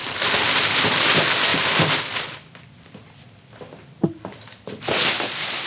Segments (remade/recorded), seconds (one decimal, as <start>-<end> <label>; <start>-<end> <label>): 0.0-0.6 remade; 0.6-1.5 recorded; 1.5-4.6 remade; 4.6-5.7 recorded